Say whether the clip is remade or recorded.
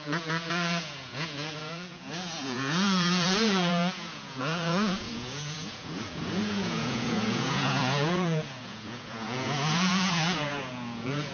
remade